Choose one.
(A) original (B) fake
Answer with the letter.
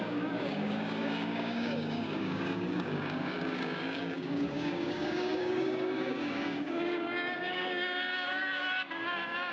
B